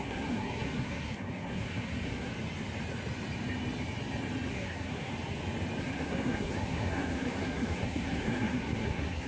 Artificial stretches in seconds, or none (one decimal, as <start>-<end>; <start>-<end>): 0.0-2.3; 4.5-5.1; 5.8-9.3